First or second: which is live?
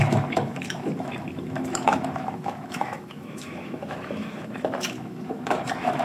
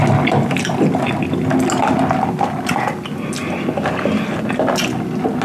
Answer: second